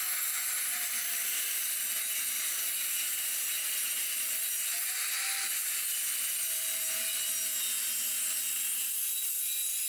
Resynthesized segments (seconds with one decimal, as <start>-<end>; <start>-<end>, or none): none